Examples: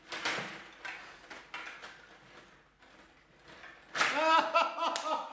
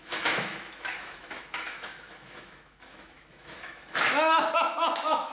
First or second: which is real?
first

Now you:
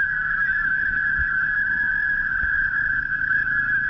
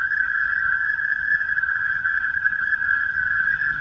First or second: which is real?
first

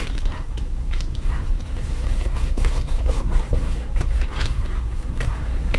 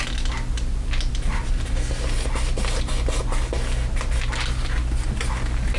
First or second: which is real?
second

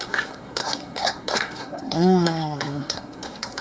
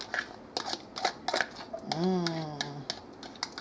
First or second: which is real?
second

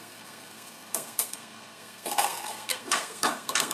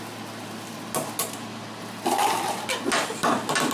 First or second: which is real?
second